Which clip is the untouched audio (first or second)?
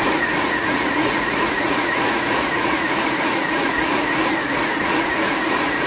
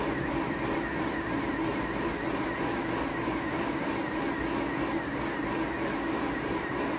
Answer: second